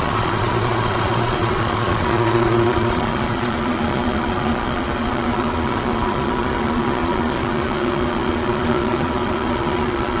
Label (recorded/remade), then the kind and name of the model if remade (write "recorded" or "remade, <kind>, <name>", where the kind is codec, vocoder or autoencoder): remade, vocoder, Vocos